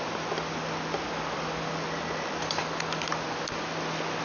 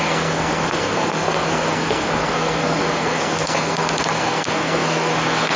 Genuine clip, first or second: first